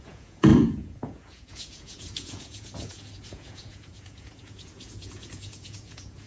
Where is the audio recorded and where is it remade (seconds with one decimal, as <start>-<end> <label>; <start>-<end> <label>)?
0.0-6.3 remade